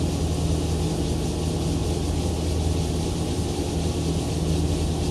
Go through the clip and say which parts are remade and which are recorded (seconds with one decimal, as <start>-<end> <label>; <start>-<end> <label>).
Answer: 0.0-5.1 recorded